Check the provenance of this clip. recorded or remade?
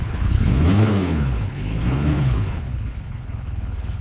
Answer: remade